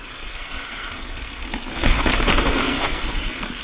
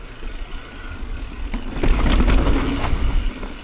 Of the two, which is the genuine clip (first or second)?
second